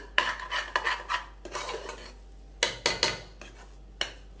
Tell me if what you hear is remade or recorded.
recorded